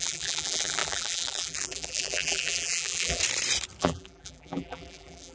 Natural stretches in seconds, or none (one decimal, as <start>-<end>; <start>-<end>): 3.2-3.8